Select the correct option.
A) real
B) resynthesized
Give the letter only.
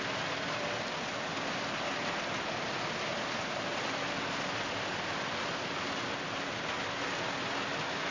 A